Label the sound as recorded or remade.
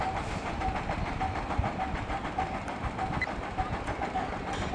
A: recorded